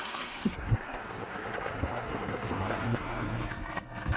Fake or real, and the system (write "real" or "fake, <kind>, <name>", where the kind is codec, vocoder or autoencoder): fake, codec, SNAC